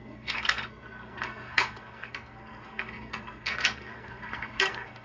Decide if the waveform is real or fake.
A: fake